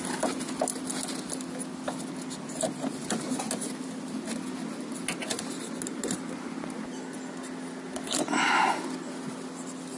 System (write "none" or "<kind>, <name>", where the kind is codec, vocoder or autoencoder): none